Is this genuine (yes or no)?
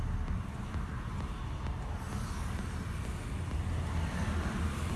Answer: yes